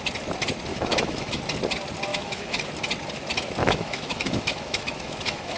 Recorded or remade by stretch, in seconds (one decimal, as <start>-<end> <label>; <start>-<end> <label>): 0.0-0.7 recorded; 0.7-1.4 remade; 1.4-2.1 recorded; 2.1-2.6 remade; 2.6-3.6 recorded; 3.6-5.6 remade